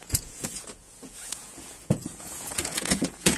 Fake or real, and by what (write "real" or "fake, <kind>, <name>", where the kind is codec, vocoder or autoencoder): fake, vocoder, Vocos